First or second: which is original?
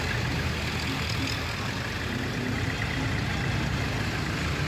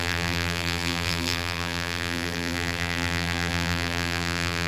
first